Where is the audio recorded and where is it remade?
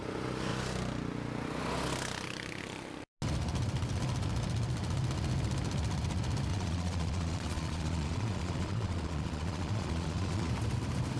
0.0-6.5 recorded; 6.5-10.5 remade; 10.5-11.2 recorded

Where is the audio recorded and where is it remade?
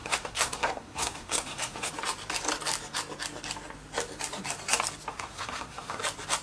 0.0-1.9 remade; 1.9-5.1 recorded; 5.1-6.0 remade; 6.0-6.4 recorded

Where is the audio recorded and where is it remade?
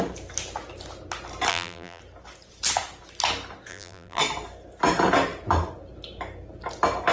0.0-1.5 recorded; 1.5-2.0 remade; 2.0-3.7 recorded; 3.7-4.2 remade; 4.2-7.1 recorded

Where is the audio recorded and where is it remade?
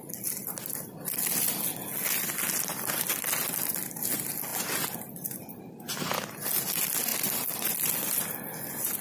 0.0-9.0 recorded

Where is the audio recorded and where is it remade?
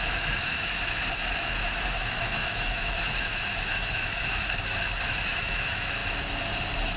0.0-6.0 remade; 6.0-7.0 recorded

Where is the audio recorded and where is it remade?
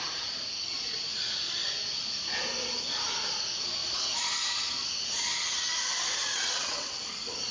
0.0-6.2 recorded; 6.2-7.0 remade; 7.0-7.5 recorded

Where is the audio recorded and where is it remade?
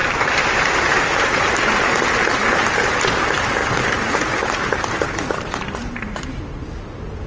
0.0-1.2 remade; 1.2-3.6 recorded; 3.6-6.4 remade; 6.4-7.3 recorded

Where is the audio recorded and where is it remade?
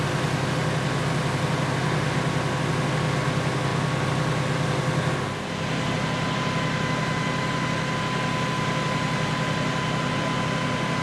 0.0-11.0 recorded